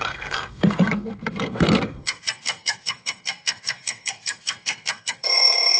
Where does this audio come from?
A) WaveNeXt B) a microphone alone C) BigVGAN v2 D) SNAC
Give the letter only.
D